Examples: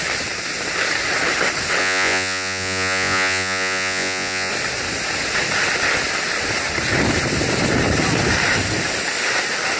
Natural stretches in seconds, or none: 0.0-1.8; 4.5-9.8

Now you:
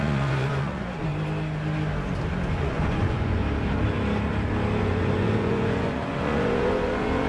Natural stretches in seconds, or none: 1.1-2.5; 3.4-4.8

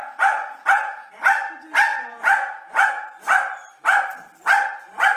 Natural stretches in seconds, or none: 1.1-1.9; 3.2-5.2

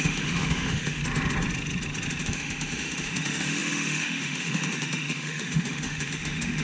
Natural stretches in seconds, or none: 1.0-2.2